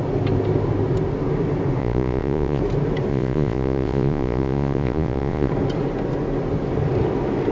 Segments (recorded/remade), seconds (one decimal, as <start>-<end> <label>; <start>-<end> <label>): 0.0-1.8 recorded; 1.8-2.6 remade; 2.6-3.1 recorded; 3.1-5.5 remade; 5.5-7.5 recorded